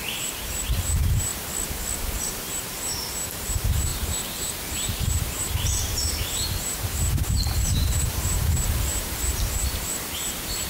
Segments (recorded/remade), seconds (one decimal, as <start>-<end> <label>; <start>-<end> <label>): 0.0-1.3 remade; 1.3-2.5 recorded; 2.5-10.7 remade